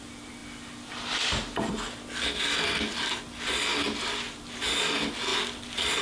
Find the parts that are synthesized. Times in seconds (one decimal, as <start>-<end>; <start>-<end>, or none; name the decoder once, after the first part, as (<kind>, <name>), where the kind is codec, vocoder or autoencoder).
none